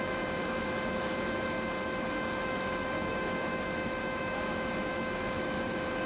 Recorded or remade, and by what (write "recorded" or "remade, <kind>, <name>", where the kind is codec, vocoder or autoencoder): remade, autoencoder, DAC-VAE